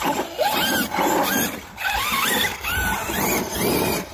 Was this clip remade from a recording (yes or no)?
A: yes